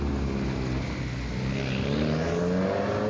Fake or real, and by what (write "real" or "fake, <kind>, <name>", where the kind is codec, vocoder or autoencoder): real